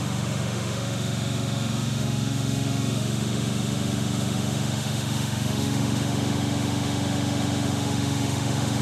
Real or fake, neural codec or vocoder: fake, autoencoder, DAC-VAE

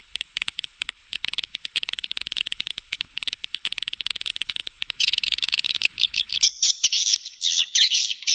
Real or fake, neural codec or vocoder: fake, codec, HILCodec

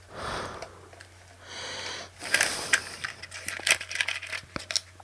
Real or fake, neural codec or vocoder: real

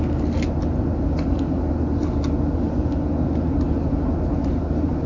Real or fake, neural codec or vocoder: real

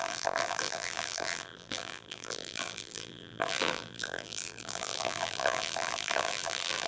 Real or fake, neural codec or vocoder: fake, vocoder, BigVGAN v2